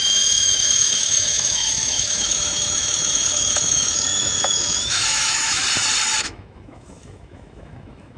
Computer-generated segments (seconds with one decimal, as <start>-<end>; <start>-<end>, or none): 0.0-5.6; 6.2-8.2